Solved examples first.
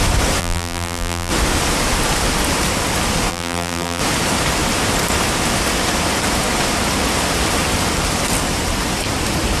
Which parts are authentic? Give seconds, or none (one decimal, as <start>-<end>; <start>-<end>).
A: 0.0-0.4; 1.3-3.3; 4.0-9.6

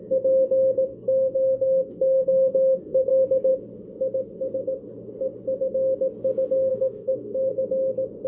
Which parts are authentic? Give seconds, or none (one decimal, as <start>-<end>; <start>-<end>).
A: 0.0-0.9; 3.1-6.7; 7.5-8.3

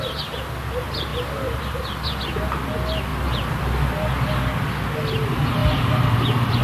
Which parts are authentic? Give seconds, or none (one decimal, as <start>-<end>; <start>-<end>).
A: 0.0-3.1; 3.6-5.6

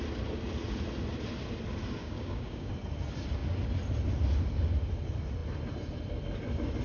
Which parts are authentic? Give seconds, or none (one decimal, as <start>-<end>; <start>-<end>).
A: 0.0-2.0; 2.7-6.8